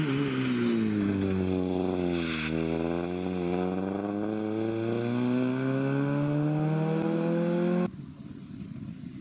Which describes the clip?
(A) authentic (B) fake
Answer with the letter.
A